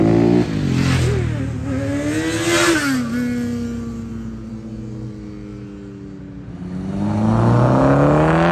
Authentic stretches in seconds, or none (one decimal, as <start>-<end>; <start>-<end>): 0.0-8.5

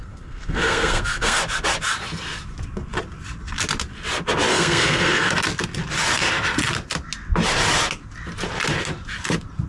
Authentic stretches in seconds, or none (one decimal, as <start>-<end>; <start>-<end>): 1.4-4.5; 5.3-9.7

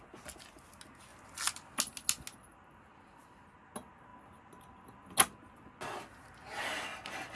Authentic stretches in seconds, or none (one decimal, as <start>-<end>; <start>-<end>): 0.0-7.4

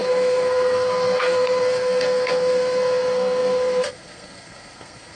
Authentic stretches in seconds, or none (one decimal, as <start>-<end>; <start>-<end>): none

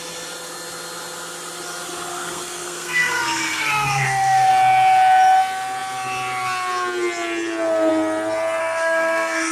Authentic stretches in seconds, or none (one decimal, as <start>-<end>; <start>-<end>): 0.0-2.1; 4.5-8.6

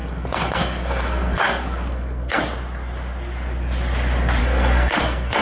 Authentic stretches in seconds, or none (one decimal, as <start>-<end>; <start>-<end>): 2.4-4.4

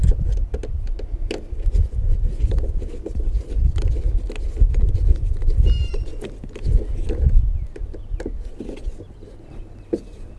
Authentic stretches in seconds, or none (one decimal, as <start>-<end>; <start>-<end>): 0.0-10.4